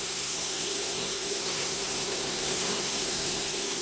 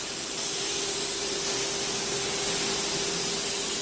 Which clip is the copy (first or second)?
first